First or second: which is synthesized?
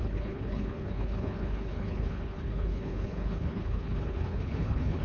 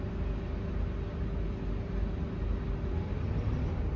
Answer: first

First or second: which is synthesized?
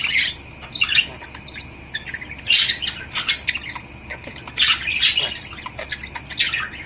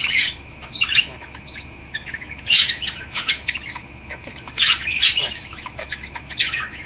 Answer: second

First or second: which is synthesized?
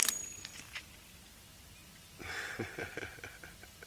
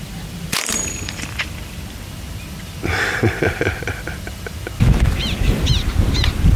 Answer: second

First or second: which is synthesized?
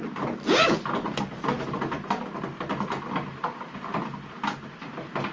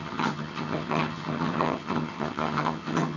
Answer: second